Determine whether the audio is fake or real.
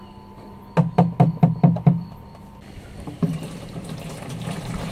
real